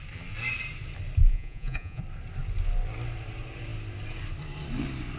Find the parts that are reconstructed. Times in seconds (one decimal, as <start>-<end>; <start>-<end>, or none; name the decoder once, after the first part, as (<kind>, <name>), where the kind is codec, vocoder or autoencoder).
1.3-2.0 (vocoder, Vocos)